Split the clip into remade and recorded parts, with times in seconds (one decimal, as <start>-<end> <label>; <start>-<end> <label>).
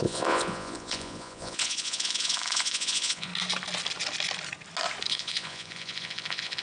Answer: 0.0-3.3 remade; 3.3-5.1 recorded; 5.1-6.6 remade